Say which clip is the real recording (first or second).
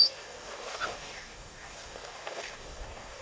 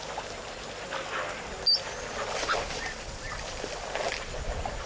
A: second